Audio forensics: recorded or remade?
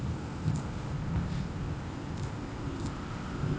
remade